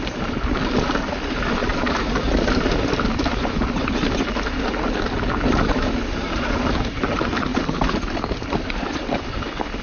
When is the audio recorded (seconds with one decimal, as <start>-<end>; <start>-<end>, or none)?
0.0-9.8